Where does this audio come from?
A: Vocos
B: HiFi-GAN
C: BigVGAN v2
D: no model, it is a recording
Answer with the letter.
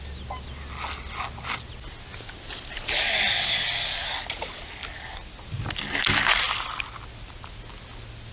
D